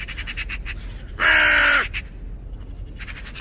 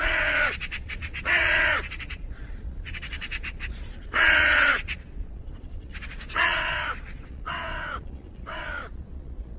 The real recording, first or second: first